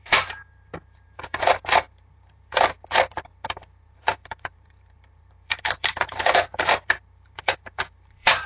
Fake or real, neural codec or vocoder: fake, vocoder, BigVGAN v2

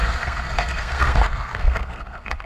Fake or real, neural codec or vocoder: fake, codec, SNAC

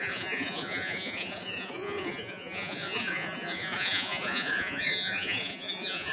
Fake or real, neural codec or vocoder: fake, vocoder, Vocos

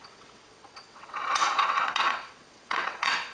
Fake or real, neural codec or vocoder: fake, vocoder, WaveNeXt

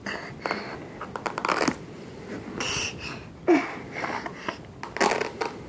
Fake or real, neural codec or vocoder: real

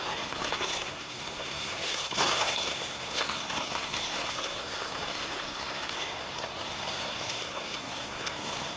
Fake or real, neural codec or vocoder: fake, codec, SNAC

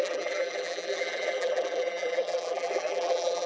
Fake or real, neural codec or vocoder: fake, vocoder, BigVGAN v2